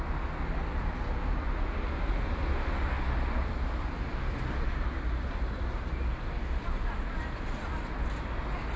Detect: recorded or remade recorded